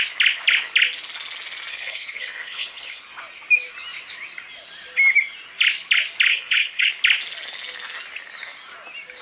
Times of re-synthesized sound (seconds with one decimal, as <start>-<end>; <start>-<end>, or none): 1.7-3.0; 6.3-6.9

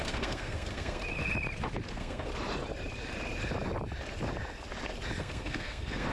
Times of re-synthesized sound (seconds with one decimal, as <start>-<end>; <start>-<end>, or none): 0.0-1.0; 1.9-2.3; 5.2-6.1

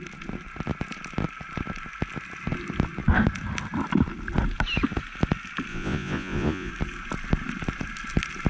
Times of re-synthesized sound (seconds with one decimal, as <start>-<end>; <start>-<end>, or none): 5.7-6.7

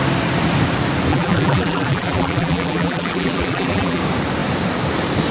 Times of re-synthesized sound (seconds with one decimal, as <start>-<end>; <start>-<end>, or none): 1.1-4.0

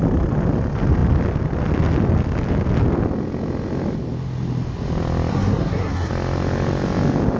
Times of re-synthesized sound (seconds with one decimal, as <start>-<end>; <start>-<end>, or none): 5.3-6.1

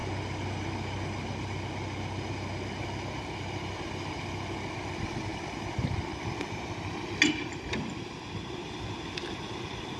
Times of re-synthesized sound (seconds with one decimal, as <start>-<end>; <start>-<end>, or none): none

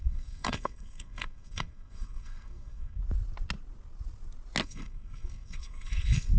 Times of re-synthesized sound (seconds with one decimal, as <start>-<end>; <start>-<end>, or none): 0.0-3.0; 4.6-6.4